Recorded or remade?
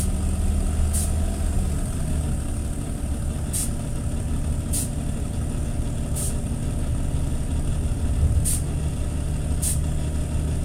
recorded